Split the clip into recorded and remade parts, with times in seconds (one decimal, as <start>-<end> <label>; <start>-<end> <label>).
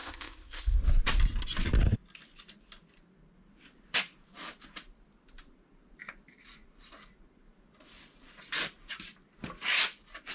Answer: 0.0-0.8 remade; 0.8-10.3 recorded